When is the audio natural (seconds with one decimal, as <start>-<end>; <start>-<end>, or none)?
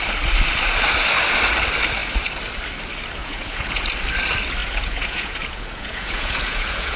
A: 0.0-3.2; 3.8-4.6